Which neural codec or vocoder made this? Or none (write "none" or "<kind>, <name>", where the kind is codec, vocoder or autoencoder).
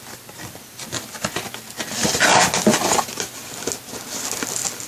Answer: none